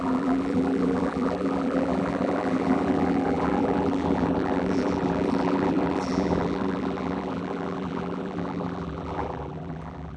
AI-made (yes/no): yes